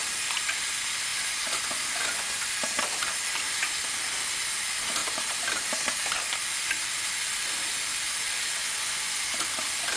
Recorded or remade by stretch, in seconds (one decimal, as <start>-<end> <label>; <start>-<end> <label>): 0.0-1.1 recorded; 1.1-2.4 remade; 2.4-8.6 recorded; 8.6-9.2 remade; 9.2-10.0 recorded